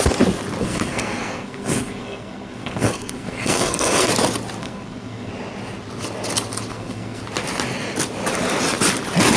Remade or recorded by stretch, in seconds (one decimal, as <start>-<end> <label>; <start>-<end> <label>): 0.0-0.6 recorded; 0.6-4.1 remade; 4.1-4.6 recorded; 4.6-5.3 remade; 5.3-6.7 recorded; 6.7-7.2 remade; 7.2-9.4 recorded